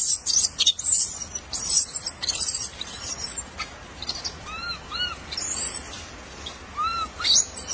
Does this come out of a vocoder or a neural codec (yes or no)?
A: no